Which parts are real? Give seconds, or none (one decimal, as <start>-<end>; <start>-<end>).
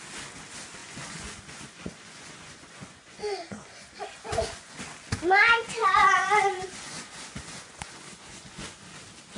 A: 0.0-0.8; 4.8-5.8; 9.0-9.4